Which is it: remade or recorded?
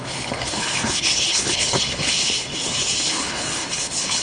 remade